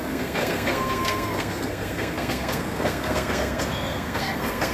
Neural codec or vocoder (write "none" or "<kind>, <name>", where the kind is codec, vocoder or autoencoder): codec, SNAC